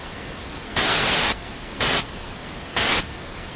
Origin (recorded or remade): remade